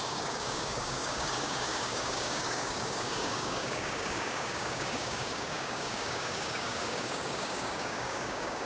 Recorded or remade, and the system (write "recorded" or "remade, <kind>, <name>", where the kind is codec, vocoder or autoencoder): remade, codec, DAC